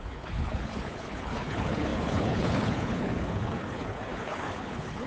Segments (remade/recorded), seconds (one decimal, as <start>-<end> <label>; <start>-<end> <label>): 0.0-5.1 remade